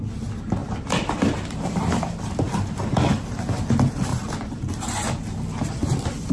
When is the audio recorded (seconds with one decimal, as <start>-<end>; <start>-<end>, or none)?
0.0-0.6; 3.3-4.1; 4.6-6.3